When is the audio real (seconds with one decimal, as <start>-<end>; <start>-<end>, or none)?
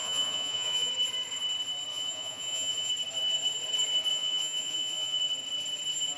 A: 0.9-1.9; 2.9-4.1; 5.2-6.2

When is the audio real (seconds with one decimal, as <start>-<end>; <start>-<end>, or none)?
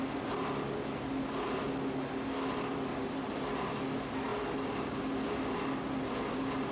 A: 0.0-6.7